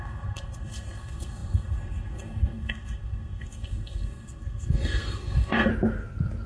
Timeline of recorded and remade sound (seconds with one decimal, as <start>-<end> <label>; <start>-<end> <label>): 0.0-5.7 remade; 5.7-6.5 recorded